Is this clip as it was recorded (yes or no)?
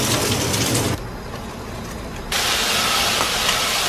yes